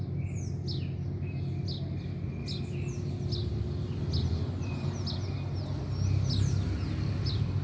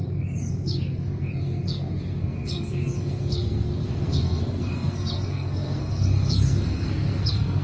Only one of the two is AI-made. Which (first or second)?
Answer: second